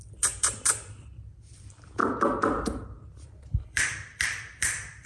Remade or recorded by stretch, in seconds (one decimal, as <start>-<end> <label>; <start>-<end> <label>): 0.0-2.0 remade; 2.0-3.1 recorded; 3.1-5.1 remade